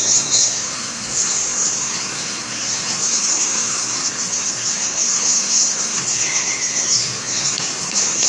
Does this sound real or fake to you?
fake